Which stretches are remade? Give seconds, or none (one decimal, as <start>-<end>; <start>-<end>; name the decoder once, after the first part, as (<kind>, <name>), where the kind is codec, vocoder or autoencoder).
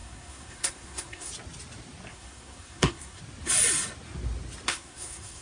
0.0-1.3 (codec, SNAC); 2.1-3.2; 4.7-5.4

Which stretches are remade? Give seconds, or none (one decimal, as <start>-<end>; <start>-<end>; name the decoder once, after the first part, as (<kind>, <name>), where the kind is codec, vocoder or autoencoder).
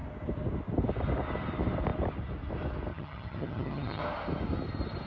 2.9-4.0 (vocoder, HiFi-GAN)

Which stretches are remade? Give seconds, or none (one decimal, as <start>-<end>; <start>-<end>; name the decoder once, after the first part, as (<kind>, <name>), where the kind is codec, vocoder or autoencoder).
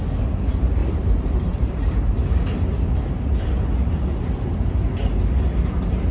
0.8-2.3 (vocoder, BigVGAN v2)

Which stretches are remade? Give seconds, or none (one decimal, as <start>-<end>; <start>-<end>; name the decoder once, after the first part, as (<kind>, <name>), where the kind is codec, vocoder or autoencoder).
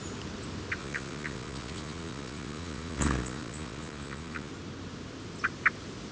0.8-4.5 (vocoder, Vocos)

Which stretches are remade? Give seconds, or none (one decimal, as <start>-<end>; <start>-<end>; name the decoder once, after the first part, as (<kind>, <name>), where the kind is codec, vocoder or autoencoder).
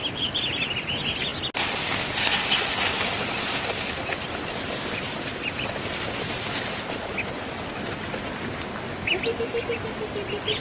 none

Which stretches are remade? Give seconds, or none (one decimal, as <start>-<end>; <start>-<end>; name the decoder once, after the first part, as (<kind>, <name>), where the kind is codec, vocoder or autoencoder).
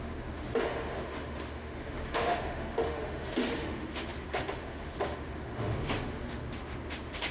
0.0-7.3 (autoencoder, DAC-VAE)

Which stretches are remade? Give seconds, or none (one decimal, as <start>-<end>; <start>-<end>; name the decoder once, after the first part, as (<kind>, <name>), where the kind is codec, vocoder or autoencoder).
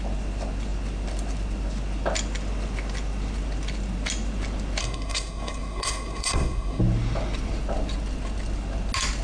4.8-6.8 (codec, SNAC)